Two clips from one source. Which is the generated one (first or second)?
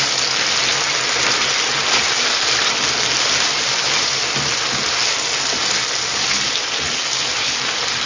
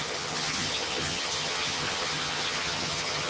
second